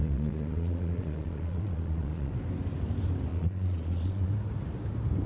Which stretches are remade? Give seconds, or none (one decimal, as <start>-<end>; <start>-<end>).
0.0-2.3; 3.3-4.3